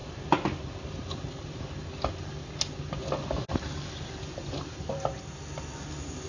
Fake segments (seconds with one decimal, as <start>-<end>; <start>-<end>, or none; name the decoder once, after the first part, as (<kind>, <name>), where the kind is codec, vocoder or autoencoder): none